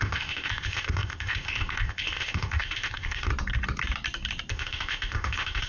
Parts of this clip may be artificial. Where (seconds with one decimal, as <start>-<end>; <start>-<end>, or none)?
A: 0.0-3.3; 4.5-5.7